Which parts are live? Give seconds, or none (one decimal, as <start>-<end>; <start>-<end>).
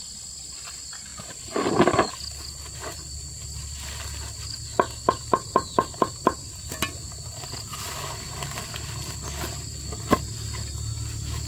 0.0-11.5